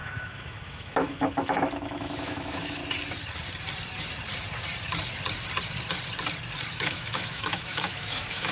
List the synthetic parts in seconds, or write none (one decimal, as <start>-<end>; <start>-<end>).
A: 0.0-2.8; 6.7-8.5